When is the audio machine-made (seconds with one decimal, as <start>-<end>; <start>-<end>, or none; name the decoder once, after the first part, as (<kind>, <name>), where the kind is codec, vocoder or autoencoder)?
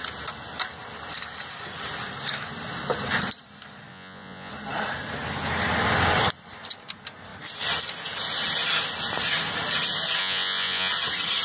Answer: 3.9-4.5 (vocoder, Vocos); 10.2-10.9